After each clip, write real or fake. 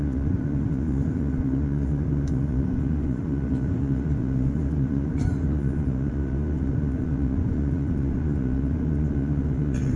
fake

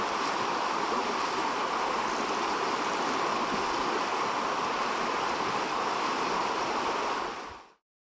real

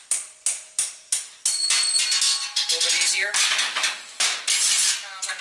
real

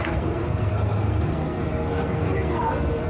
fake